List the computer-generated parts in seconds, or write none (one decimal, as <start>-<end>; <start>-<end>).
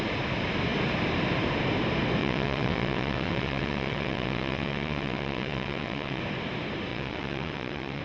2.2-6.2; 6.9-8.0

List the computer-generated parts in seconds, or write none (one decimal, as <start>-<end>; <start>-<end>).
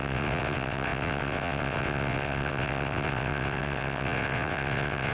0.0-5.1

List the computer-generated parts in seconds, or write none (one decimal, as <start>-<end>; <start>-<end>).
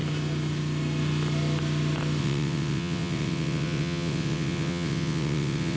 2.2-5.8